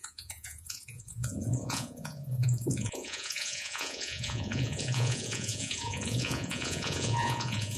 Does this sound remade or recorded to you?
remade